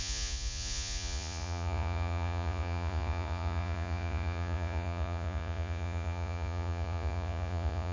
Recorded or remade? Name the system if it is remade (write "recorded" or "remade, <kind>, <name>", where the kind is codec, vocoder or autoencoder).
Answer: remade, vocoder, Vocos